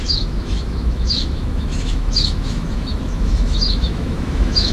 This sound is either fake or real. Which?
fake